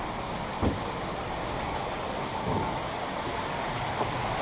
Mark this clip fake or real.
real